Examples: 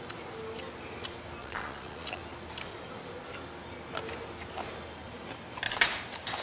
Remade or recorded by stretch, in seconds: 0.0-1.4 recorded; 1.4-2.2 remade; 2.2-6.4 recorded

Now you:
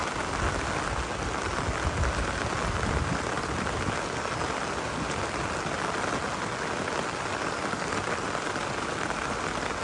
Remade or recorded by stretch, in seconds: 0.0-9.8 recorded

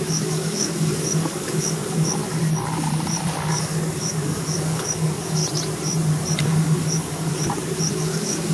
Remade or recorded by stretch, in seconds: 0.0-2.2 remade; 2.2-3.5 recorded; 3.5-5.4 remade; 5.4-6.4 recorded; 6.4-7.3 remade; 7.3-7.9 recorded; 7.9-8.5 remade

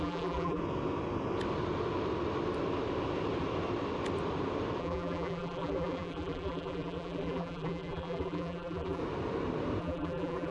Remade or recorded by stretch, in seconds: 0.0-0.6 remade; 0.6-4.8 recorded; 4.8-9.0 remade; 9.0-9.8 recorded; 9.8-10.5 remade

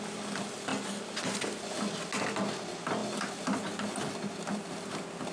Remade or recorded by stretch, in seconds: 0.0-5.3 recorded

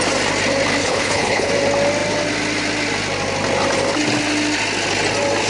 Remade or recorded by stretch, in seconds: 0.0-0.8 recorded; 0.8-1.5 remade; 1.5-5.5 recorded